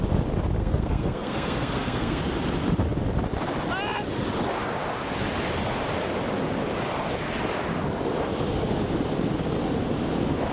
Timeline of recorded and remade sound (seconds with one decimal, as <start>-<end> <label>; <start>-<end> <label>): 0.0-0.6 recorded; 0.6-2.2 remade; 2.2-10.5 recorded